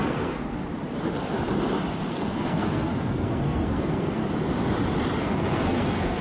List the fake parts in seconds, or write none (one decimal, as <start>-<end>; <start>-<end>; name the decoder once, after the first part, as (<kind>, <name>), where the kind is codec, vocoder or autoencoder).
0.0-0.6 (codec, SNAC); 2.1-4.2; 5.2-6.2